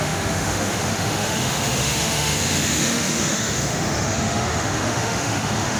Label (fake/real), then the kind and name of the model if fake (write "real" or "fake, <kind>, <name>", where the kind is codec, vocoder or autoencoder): fake, autoencoder, DAC-VAE